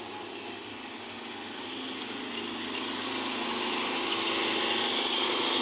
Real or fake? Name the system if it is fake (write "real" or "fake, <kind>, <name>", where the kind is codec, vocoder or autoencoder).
real